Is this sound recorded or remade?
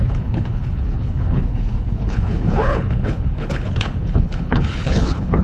remade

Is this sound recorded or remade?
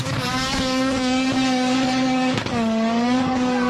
remade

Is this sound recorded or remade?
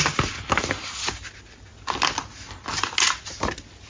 recorded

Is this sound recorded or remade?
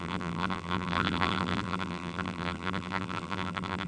remade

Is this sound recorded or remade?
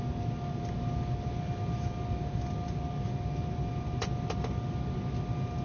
recorded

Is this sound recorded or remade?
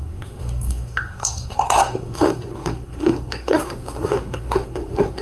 remade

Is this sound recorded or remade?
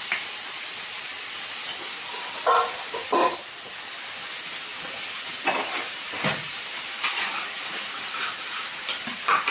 recorded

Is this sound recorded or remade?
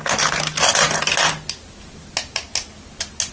recorded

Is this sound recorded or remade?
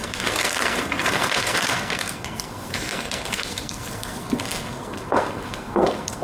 remade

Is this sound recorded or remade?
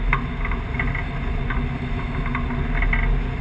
recorded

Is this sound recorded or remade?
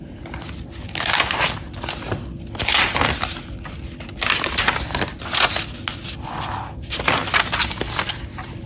recorded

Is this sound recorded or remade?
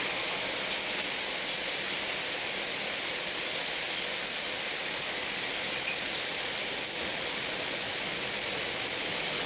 recorded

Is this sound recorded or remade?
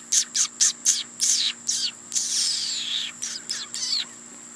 recorded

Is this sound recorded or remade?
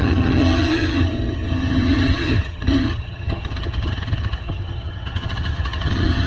remade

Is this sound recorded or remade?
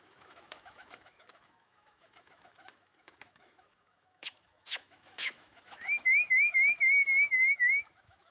remade